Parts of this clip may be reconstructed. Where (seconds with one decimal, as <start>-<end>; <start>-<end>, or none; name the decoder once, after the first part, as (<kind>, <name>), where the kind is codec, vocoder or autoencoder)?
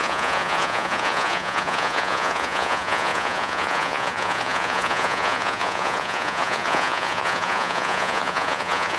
0.0-9.0 (vocoder, Vocos)